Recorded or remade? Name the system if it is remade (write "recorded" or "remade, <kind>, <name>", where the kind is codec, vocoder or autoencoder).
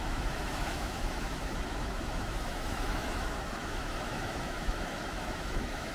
remade, autoencoder, DAC-VAE